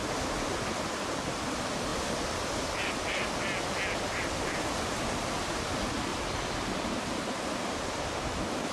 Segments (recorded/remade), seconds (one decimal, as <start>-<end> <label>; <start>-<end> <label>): 0.0-6.1 recorded; 6.1-7.4 remade; 7.4-8.7 recorded